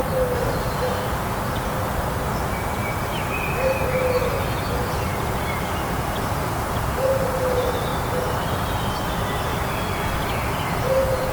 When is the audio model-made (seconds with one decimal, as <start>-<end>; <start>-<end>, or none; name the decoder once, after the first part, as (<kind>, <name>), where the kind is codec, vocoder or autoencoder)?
2.8-3.4 (vocoder, BigVGAN v2); 7.9-9.0; 9.5-10.5